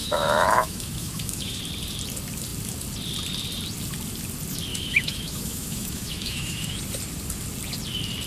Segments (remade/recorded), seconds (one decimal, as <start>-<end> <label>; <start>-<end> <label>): 0.0-1.6 remade; 1.6-4.7 recorded; 4.7-6.8 remade; 6.8-8.3 recorded